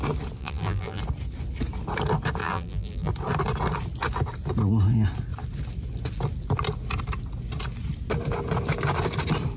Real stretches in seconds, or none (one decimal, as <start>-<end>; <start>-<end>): 0.0-0.4; 1.0-2.4; 3.1-9.6